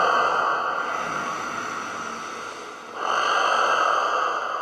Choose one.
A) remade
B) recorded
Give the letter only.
B